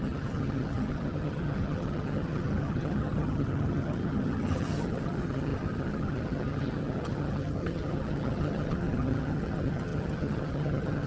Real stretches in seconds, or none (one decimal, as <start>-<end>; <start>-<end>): none